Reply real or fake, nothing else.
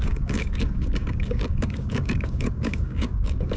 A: fake